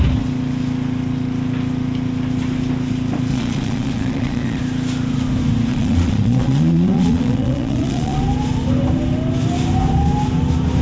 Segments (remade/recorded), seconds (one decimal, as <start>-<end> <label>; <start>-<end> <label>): 0.0-3.3 recorded; 3.3-4.6 remade; 4.6-5.7 recorded; 5.7-8.2 remade; 8.2-10.8 recorded